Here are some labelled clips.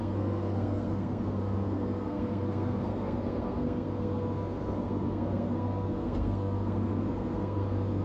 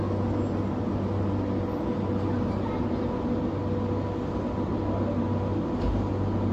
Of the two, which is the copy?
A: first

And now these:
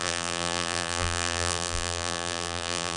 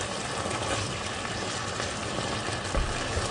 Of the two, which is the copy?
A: first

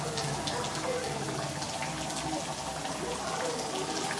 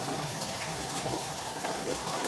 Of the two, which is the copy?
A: second